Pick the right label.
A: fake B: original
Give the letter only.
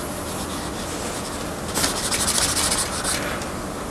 B